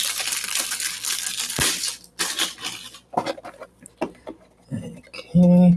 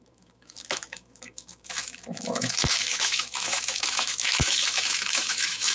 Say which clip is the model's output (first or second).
second